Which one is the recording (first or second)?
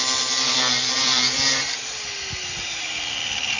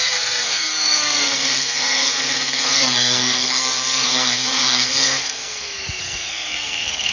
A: first